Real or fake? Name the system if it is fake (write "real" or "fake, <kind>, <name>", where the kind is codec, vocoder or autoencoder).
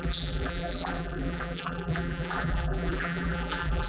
fake, vocoder, BigVGAN v2